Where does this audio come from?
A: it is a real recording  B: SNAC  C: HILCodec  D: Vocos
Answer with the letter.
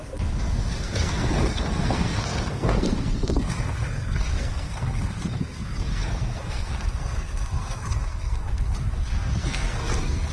B